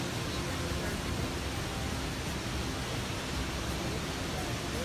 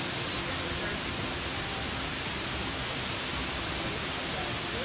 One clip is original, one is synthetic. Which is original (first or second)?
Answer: first